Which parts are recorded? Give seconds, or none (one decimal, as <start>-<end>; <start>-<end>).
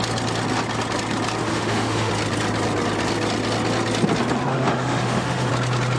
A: 0.0-1.4; 2.1-4.5; 5.5-6.0